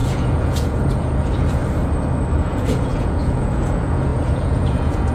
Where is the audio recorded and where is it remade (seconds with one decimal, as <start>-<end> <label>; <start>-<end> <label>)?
0.0-1.6 remade; 1.6-2.4 recorded; 2.4-5.1 remade